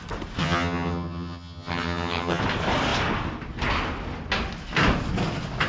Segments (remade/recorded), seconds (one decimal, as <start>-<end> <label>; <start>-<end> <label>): 0.0-0.4 recorded; 0.4-2.4 remade; 2.4-5.7 recorded